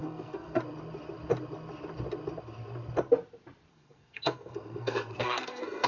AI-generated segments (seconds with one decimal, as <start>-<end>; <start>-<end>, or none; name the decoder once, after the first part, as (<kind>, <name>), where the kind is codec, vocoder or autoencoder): 0.0-0.6 (codec, SNAC); 3.7-5.9

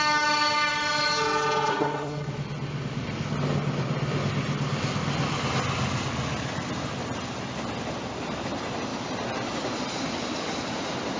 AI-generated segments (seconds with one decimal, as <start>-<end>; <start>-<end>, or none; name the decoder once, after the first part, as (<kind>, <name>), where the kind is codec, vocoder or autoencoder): 1.7-2.3 (codec, SNAC)

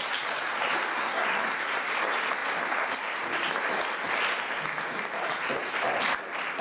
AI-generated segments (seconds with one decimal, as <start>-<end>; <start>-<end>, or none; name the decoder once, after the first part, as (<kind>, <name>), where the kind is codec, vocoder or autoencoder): 1.0-1.9 (codec, SNAC)

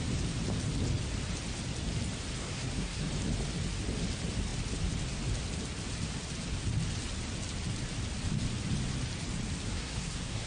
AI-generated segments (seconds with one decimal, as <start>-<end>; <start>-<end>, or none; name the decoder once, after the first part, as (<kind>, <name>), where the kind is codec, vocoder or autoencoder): 2.4-3.1 (codec, SNAC); 9.7-10.5

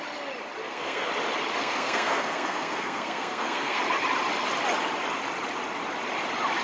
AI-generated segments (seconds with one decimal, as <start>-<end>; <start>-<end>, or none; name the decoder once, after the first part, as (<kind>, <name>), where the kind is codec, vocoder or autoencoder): 0.6-1.1 (codec, SNAC); 1.6-3.8

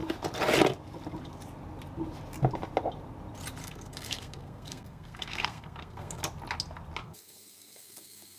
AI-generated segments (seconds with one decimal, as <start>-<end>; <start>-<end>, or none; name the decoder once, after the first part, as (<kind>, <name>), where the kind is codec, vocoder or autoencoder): 3.6-6.2 (codec, SNAC); 7.0-8.4

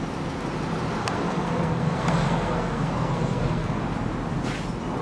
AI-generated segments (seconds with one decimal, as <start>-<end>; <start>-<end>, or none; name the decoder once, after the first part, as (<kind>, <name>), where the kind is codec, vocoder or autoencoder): 1.0-3.8 (codec, SNAC)